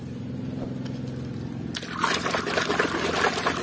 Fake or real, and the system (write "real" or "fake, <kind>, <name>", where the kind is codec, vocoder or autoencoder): real